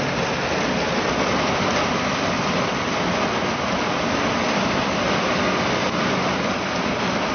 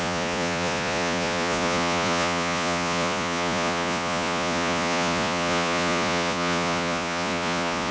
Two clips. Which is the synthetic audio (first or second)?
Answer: second